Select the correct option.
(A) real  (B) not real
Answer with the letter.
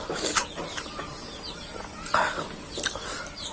A